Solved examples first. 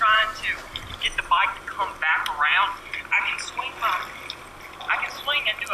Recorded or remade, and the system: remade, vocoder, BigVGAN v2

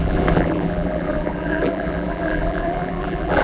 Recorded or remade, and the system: remade, vocoder, BigVGAN v2